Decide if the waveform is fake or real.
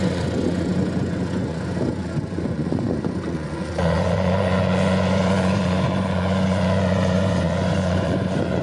fake